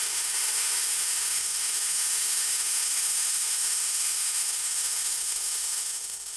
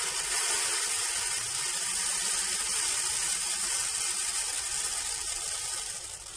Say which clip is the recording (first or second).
second